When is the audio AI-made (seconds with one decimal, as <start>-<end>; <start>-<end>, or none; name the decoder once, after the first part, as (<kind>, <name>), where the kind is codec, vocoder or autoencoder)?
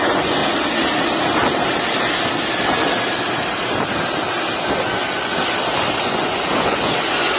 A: 0.0-0.4 (vocoder, Vocos); 4.8-5.3; 6.0-7.4